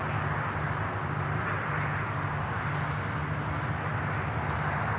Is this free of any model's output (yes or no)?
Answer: yes